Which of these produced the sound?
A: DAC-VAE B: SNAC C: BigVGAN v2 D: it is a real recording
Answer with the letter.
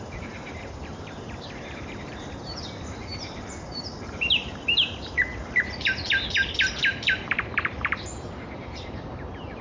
C